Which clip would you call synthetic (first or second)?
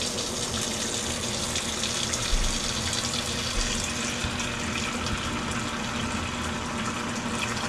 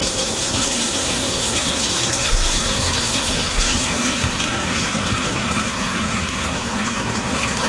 second